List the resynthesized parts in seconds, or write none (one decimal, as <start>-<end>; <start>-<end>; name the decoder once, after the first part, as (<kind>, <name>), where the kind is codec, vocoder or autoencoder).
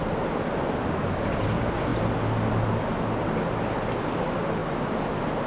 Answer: none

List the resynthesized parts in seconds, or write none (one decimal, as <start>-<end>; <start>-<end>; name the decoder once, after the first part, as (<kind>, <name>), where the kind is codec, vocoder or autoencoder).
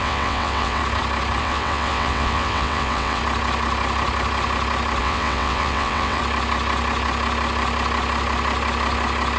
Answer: 0.0-0.8 (vocoder, WaveNeXt); 1.4-3.2; 5.0-6.2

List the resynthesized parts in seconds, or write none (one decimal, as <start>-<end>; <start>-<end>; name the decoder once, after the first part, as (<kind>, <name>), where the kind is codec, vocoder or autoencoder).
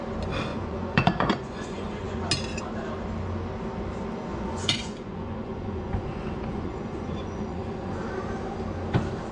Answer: 0.5-2.2 (vocoder, Vocos); 4.3-8.0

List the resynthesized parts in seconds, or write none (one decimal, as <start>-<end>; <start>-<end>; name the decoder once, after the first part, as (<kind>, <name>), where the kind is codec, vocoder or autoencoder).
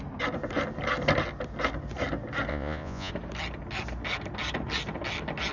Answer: 2.5-3.1 (vocoder, Vocos)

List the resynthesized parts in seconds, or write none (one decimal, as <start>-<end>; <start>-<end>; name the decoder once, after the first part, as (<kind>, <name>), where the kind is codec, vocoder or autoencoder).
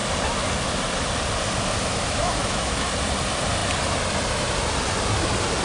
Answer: 1.9-2.9 (autoencoder, DAC-VAE)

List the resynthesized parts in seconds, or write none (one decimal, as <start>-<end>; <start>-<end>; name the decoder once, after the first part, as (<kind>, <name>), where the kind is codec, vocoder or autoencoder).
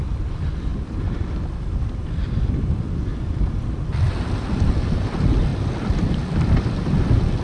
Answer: 0.0-3.1 (vocoder, BigVGAN v2); 4.0-7.4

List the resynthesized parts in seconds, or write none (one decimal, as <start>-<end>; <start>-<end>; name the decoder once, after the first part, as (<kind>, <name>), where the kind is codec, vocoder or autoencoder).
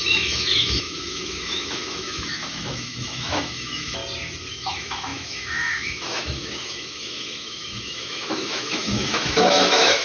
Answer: 0.0-4.0 (autoencoder, DAC-VAE); 4.5-10.0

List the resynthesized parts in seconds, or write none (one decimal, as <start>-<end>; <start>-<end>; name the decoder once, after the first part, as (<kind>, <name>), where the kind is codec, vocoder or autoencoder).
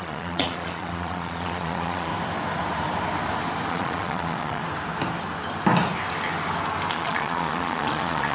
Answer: 0.0-2.1 (vocoder, Vocos); 3.7-4.6; 6.9-8.3